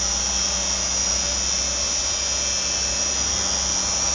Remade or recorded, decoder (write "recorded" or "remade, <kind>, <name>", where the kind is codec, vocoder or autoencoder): recorded